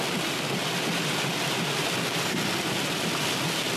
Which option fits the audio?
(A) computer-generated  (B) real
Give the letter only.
A